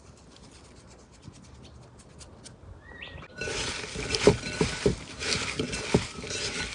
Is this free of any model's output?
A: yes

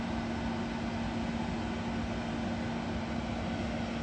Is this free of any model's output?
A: yes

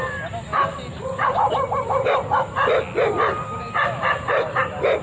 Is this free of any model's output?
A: yes